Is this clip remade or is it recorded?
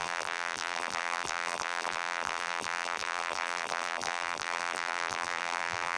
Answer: remade